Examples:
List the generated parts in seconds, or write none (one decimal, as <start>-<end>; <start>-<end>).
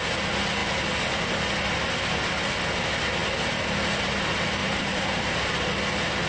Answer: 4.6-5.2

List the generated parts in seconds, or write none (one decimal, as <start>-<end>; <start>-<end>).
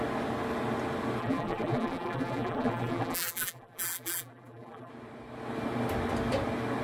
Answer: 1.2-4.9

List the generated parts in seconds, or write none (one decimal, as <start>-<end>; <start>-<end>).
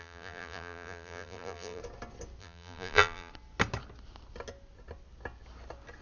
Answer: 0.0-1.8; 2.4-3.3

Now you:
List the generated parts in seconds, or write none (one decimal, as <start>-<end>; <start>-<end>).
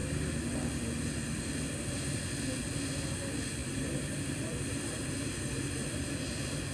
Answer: 0.0-2.2; 3.6-6.2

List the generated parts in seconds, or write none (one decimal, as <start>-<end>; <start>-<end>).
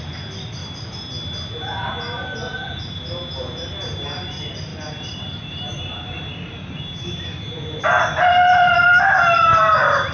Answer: 0.0-0.6; 3.7-10.1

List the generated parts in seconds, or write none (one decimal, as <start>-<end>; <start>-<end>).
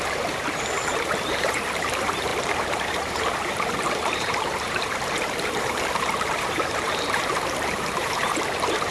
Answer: 0.0-8.9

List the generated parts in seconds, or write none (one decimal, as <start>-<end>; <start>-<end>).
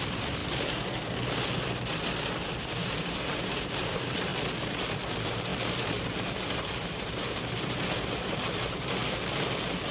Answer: 0.0-0.4; 2.6-4.3; 5.1-5.5; 6.0-9.0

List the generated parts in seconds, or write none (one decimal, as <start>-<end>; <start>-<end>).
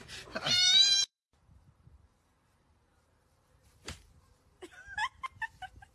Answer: 0.0-5.0